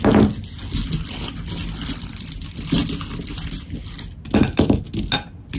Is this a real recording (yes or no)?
yes